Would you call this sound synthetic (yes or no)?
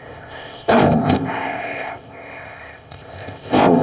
yes